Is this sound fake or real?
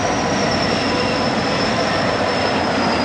fake